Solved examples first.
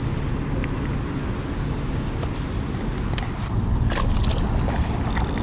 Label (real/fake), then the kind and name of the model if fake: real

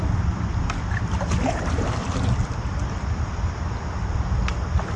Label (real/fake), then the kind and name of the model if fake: real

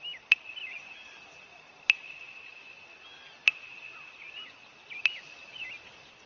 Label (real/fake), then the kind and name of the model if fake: real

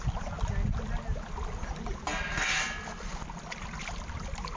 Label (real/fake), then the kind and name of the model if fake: real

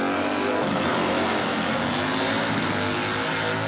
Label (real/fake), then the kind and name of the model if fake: real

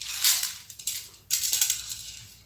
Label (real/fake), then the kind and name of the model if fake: real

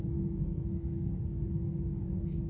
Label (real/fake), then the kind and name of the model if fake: fake, codec, SNAC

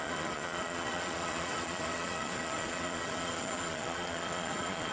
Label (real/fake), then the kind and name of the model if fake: fake, vocoder, Vocos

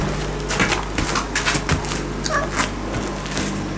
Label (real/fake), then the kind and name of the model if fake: real